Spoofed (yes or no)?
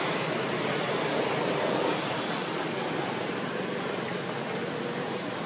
yes